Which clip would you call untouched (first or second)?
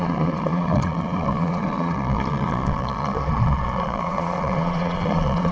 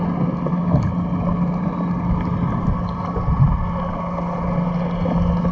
second